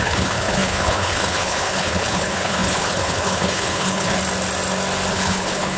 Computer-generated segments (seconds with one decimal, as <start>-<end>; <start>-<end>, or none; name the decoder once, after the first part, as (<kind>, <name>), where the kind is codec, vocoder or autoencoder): 0.0-4.2 (codec, HILCodec); 5.1-5.8